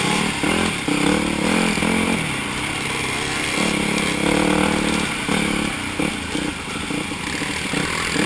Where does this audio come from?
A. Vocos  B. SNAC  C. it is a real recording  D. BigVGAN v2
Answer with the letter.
C